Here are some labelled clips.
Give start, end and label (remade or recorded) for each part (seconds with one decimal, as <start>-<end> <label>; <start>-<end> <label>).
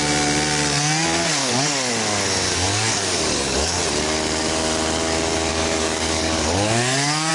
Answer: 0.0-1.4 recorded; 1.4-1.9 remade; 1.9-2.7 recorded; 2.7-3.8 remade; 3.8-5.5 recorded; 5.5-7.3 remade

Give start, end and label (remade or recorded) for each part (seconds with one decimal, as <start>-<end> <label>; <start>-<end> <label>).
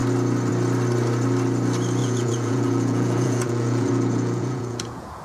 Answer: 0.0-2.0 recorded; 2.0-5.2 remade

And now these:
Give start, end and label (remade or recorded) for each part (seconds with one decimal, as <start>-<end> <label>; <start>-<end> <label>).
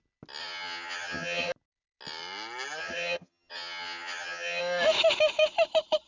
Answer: 0.0-0.4 recorded; 0.4-1.5 remade; 1.5-2.8 recorded; 2.8-4.6 remade; 4.6-6.1 recorded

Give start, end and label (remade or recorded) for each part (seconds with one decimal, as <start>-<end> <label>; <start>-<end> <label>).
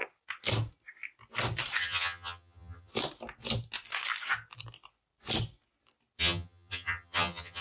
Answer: 0.0-1.8 recorded; 1.8-2.9 remade; 2.9-6.2 recorded; 6.2-7.6 remade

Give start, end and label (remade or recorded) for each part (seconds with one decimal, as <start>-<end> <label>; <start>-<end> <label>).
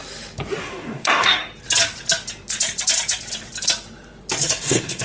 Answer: 0.0-0.6 recorded; 0.6-1.4 remade; 1.4-4.4 recorded; 4.4-5.0 remade